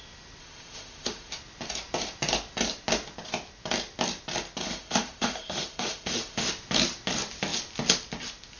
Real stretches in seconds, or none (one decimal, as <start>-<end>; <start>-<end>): 0.0-0.4; 1.3-4.6; 6.5-8.6